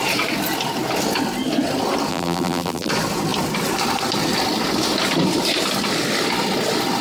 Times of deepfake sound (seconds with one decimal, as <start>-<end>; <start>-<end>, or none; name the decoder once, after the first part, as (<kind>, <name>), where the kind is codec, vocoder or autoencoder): 2.1-2.9 (vocoder, BigVGAN v2)